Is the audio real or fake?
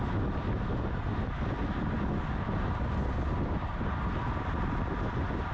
real